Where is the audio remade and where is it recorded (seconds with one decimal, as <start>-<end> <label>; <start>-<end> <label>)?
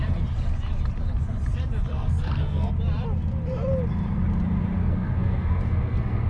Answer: 0.0-1.9 recorded; 1.9-2.7 remade; 2.7-4.8 recorded; 4.8-6.3 remade